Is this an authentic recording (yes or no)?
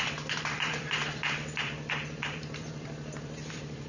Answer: no